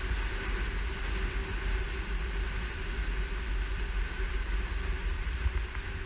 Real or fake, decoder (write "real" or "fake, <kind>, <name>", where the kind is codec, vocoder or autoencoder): real